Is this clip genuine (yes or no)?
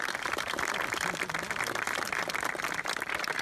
no